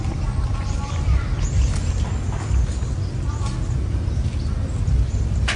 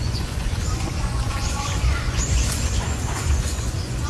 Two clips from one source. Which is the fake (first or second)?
second